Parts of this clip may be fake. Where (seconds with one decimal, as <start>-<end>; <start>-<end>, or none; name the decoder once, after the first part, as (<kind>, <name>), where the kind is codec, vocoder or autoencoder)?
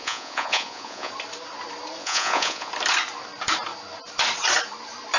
0.0-1.1 (vocoder, Vocos); 2.0-2.7